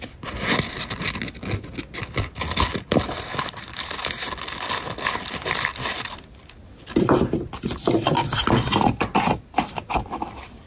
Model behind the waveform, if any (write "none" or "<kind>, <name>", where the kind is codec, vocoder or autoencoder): none